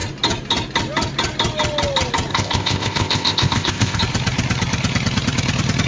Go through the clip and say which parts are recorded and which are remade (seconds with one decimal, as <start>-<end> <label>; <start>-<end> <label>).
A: 0.0-2.3 recorded; 2.3-4.0 remade; 4.0-5.9 recorded